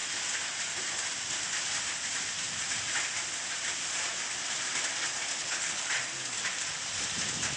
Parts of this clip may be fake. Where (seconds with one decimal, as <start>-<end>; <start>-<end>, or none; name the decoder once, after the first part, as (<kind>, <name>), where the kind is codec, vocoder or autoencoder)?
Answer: 5.4-5.9 (codec, HILCodec)